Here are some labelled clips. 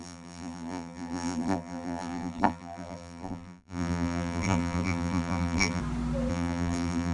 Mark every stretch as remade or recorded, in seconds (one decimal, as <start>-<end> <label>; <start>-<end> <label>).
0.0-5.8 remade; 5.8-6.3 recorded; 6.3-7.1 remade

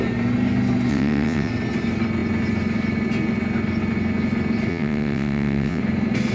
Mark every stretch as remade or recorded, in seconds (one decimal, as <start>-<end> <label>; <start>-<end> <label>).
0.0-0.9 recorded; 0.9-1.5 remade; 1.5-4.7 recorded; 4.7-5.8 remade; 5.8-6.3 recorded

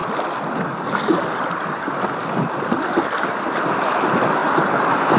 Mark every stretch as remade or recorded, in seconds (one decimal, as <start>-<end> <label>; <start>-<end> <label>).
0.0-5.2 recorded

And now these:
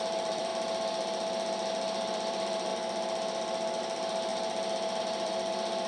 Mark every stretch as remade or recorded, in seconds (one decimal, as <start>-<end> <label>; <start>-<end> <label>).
0.0-0.5 remade; 0.5-1.7 recorded; 1.7-2.7 remade; 2.7-3.8 recorded; 3.8-4.3 remade; 4.3-5.0 recorded; 5.0-5.9 remade

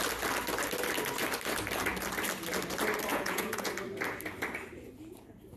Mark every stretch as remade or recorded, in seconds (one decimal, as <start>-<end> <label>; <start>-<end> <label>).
0.0-3.1 recorded; 3.1-3.7 remade; 3.7-5.6 recorded

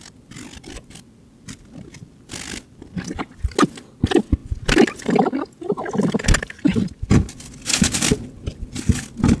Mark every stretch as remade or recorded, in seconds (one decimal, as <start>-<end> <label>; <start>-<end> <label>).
0.0-9.4 recorded

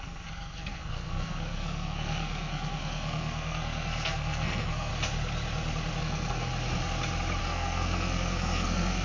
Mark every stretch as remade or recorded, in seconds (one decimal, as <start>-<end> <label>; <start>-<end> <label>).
0.0-4.9 remade; 4.9-6.0 recorded; 6.0-6.5 remade; 6.5-7.4 recorded; 7.4-9.0 remade